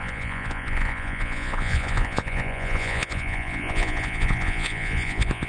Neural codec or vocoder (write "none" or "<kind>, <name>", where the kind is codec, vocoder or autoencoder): vocoder, Vocos